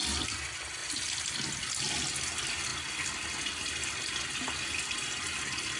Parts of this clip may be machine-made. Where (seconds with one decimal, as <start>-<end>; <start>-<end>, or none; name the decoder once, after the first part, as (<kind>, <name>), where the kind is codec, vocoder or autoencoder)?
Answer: none